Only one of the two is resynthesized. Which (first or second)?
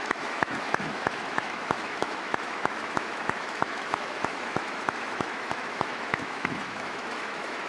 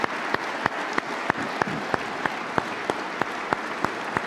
first